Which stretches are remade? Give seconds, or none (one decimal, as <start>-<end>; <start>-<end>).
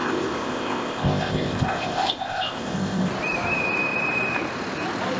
0.0-3.1